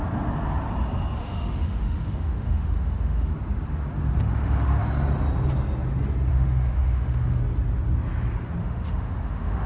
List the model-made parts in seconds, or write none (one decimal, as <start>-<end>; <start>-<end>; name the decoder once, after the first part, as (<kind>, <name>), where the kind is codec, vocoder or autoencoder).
1.2-3.3 (autoencoder, DAC-VAE); 4.2-4.8; 6.3-7.4; 8.6-9.7